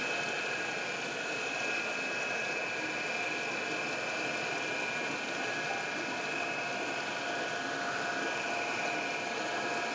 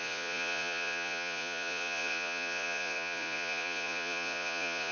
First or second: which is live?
first